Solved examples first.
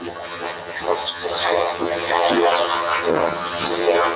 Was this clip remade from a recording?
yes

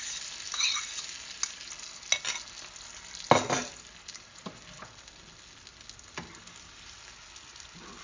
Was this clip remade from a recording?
no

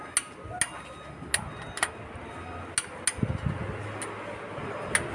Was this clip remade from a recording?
no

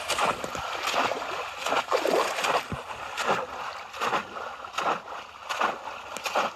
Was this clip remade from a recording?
no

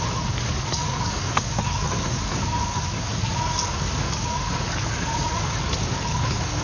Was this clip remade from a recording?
yes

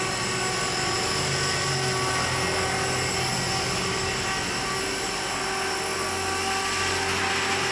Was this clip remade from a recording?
no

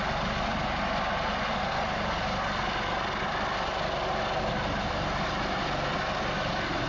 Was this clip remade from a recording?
no